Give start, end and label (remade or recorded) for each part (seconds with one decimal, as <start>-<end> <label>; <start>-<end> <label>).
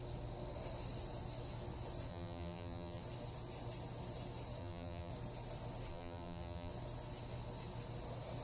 0.0-2.1 recorded; 2.1-3.0 remade; 3.0-4.6 recorded; 4.6-5.1 remade; 5.1-5.9 recorded; 5.9-6.7 remade; 6.7-8.4 recorded